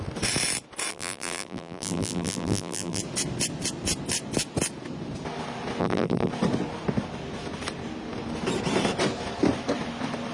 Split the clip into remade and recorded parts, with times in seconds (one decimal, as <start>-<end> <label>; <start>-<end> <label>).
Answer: 0.0-0.9 recorded; 0.9-3.0 remade; 3.0-5.8 recorded; 5.8-6.3 remade; 6.3-10.3 recorded